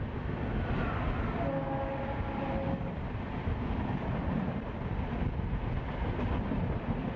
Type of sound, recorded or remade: recorded